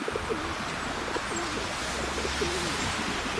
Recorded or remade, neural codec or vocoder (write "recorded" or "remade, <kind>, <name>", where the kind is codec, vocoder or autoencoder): recorded